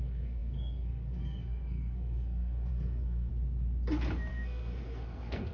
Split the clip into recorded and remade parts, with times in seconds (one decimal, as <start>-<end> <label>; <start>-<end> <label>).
0.0-3.3 remade; 3.3-4.3 recorded; 4.3-5.5 remade

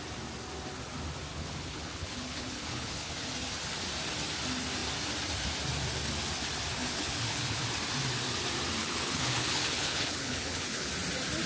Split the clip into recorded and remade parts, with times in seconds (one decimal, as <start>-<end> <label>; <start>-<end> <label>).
0.0-1.3 recorded; 1.3-3.1 remade; 3.1-6.8 recorded; 6.8-7.7 remade; 7.7-8.8 recorded; 8.8-10.9 remade; 10.9-11.5 recorded

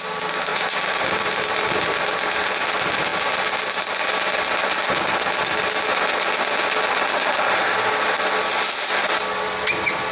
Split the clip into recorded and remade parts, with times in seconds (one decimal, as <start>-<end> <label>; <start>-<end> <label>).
0.0-0.5 recorded; 0.5-2.5 remade; 2.5-10.1 recorded

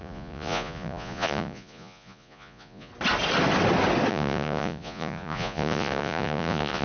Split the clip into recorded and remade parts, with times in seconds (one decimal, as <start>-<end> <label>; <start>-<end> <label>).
0.0-2.9 remade; 2.9-4.1 recorded; 4.1-6.8 remade

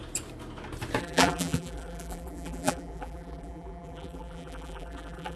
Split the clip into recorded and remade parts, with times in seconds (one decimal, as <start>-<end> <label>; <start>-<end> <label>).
0.0-1.0 recorded; 1.0-5.4 remade